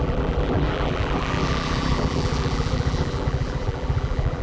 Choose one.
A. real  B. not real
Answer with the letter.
B